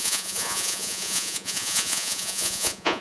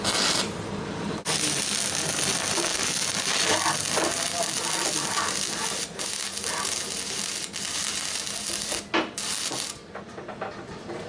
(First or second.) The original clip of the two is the second